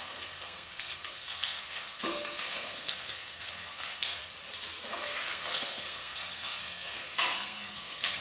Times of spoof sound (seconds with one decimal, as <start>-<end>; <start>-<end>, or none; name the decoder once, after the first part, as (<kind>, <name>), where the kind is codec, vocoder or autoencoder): 0.0-4.2 (codec, SNAC); 4.9-8.2

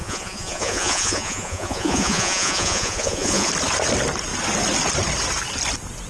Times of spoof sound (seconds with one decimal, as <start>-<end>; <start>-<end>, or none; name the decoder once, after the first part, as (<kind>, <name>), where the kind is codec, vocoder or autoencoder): 0.0-3.5 (vocoder, Vocos)

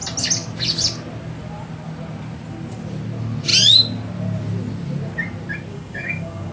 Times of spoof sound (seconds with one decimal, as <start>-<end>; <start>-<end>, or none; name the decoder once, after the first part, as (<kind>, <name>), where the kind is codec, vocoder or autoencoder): 5.7-6.5 (codec, DAC)

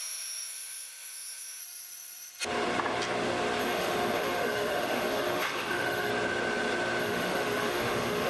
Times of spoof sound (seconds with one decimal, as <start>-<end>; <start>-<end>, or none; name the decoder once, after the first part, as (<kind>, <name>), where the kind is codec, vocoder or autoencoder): 0.0-1.6 (autoencoder, DAC-VAE); 3.6-6.1; 7.0-8.3

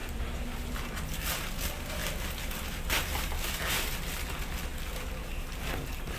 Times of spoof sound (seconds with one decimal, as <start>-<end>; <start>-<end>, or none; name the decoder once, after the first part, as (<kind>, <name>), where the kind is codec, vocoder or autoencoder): 2.0-3.7 (vocoder, BigVGAN v2); 4.7-5.7

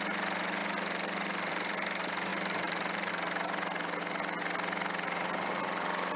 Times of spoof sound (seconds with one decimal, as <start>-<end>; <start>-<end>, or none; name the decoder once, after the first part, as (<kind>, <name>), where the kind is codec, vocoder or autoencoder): 2.3-3.1 (vocoder, BigVGAN v2)

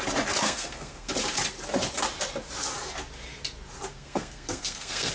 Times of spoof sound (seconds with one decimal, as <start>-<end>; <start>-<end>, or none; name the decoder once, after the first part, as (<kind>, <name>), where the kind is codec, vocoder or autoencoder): 0.4-1.1 (codec, SNAC); 3.9-5.1